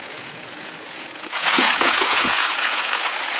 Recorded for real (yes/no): no